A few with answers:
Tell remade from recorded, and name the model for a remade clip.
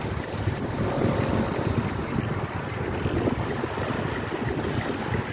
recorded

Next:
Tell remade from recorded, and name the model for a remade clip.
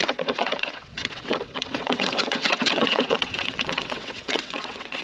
remade, vocoder, WaveNeXt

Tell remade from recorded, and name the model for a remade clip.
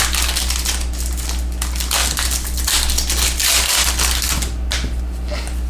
recorded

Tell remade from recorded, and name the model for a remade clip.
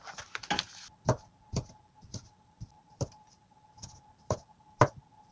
recorded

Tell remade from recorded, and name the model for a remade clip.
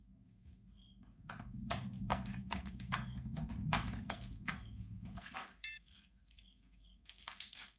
remade, codec, SNAC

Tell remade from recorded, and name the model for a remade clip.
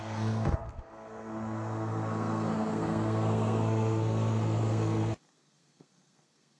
remade, codec, SNAC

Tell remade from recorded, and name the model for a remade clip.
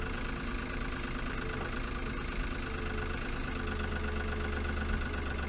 recorded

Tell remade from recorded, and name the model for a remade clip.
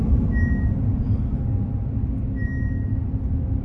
recorded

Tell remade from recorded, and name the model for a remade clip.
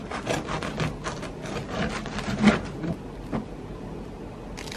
recorded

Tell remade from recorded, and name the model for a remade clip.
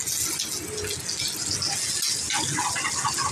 recorded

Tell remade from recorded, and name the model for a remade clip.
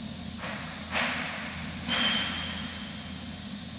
recorded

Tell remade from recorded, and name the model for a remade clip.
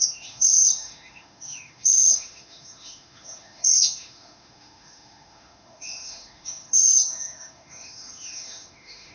remade, autoencoder, DAC-VAE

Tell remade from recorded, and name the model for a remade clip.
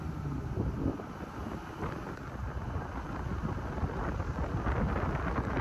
recorded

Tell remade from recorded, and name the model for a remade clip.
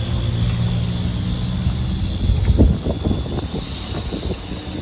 recorded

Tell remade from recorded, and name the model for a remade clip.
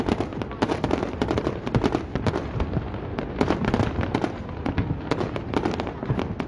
recorded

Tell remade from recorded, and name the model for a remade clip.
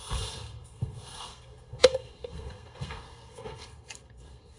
remade, codec, SNAC